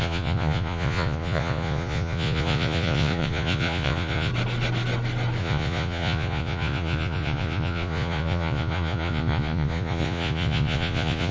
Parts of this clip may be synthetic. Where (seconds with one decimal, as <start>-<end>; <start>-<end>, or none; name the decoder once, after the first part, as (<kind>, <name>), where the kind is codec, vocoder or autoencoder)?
0.0-4.3 (vocoder, Vocos); 5.4-11.3